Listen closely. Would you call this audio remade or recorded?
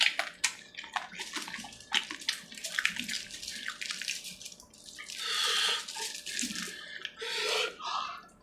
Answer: recorded